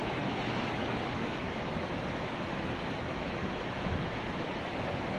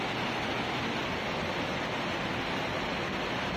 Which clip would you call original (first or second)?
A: second